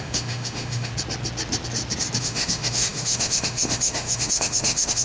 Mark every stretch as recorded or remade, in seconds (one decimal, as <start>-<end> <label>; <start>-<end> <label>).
0.0-0.9 remade; 0.9-2.2 recorded; 2.2-5.0 remade